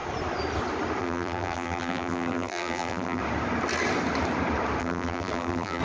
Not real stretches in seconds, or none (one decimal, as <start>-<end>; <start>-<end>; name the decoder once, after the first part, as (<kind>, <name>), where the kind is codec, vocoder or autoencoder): 1.0-3.2 (vocoder, BigVGAN v2); 4.8-5.8